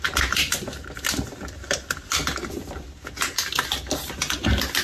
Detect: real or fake real